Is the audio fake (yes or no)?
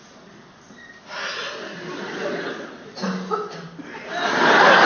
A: no